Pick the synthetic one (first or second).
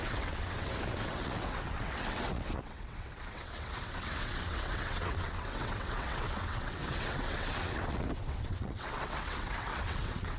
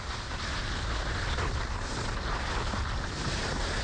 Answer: first